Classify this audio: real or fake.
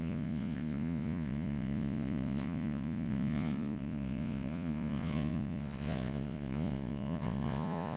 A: fake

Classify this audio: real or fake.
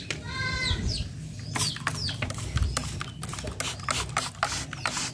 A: real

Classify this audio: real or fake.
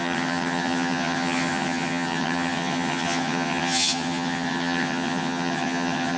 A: fake